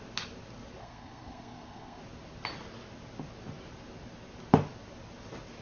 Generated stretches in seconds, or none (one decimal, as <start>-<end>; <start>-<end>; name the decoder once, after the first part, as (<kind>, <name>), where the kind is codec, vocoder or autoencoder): 0.8-2.0 (codec, SNAC)